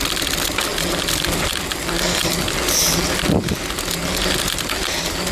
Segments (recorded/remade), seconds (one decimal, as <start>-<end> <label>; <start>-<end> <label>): 0.0-2.2 recorded; 2.2-3.5 remade; 3.5-5.3 recorded